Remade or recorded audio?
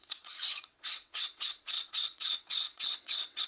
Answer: remade